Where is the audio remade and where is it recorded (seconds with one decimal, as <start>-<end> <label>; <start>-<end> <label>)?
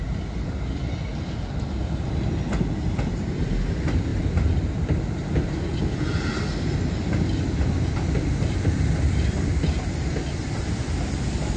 0.0-11.6 recorded